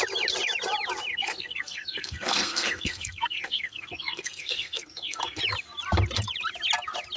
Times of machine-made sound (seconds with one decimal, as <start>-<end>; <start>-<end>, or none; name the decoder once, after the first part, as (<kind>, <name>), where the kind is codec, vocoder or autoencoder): 1.1-5.4 (codec, SNAC)